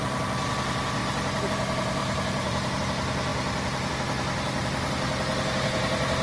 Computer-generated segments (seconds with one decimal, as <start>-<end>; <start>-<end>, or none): 0.0-0.5; 2.0-2.8